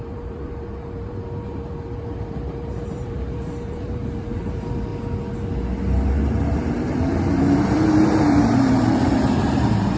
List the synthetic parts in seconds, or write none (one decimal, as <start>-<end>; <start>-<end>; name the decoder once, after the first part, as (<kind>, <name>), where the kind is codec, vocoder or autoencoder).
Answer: 0.0-4.9 (vocoder, BigVGAN v2); 6.4-10.0